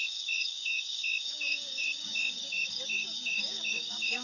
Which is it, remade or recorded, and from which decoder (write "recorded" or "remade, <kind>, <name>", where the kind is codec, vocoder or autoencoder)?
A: remade, codec, DAC